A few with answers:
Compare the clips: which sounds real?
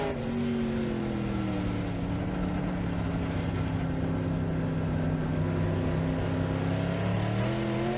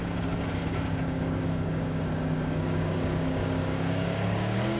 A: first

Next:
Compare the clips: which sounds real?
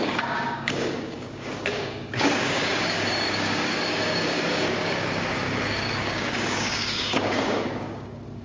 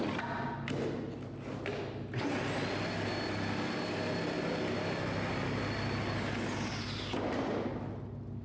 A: second